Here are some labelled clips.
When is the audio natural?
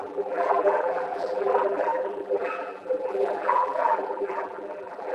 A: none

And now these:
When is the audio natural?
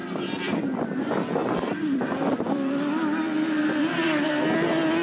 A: 0.6-1.4; 4.4-5.0